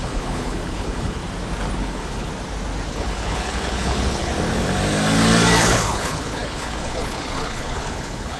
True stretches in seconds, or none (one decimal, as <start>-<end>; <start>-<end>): 1.2-1.8; 2.3-2.9; 4.3-5.6

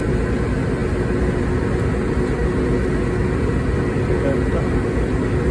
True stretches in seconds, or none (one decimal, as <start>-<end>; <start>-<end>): 0.0-5.5